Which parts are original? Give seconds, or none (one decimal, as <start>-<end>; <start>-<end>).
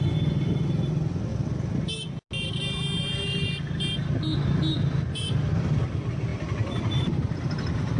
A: 1.3-5.2